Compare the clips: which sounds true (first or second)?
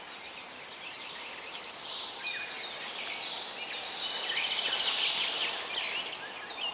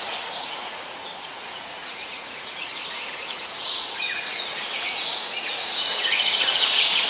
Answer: first